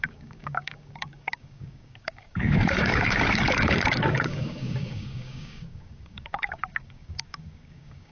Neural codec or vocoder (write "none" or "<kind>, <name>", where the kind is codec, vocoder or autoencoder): codec, DAC